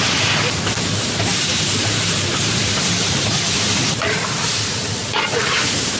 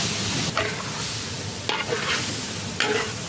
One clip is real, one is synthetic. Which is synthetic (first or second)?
first